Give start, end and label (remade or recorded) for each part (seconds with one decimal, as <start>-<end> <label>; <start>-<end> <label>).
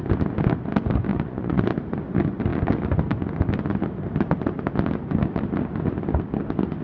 0.0-1.1 recorded; 1.1-1.7 remade; 1.7-6.8 recorded